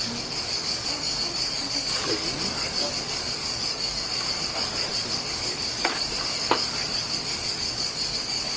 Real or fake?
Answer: fake